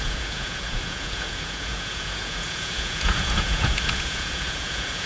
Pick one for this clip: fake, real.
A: fake